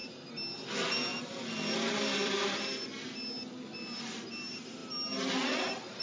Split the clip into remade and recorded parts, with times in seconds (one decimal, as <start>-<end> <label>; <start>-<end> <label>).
0.0-1.1 recorded; 1.1-2.3 remade; 2.3-6.0 recorded